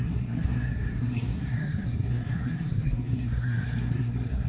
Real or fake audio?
fake